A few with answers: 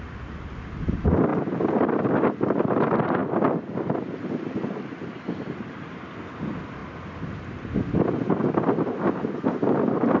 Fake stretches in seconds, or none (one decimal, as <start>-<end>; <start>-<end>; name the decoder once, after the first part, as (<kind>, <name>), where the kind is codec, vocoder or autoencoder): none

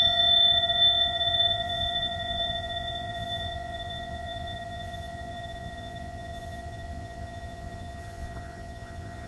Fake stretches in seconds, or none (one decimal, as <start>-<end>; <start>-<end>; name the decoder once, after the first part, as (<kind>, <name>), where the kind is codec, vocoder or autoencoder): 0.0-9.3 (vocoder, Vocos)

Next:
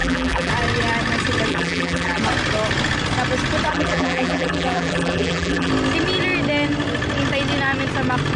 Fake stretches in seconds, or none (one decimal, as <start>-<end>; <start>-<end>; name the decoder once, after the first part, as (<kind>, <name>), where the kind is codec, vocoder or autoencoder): 0.0-0.5 (vocoder, BigVGAN v2); 1.5-2.2; 3.7-5.7

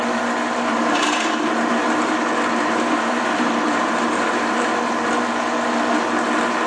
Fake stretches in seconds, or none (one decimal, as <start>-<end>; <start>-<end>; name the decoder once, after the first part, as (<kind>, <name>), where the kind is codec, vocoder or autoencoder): 0.7-4.7 (vocoder, BigVGAN v2)

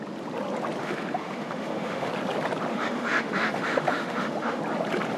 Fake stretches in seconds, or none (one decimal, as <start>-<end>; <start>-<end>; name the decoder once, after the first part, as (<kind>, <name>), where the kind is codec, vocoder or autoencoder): 0.8-2.1 (autoencoder, DAC-VAE); 2.7-4.6